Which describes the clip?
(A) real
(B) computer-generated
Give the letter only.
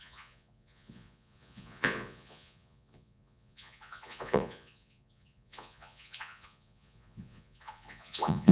B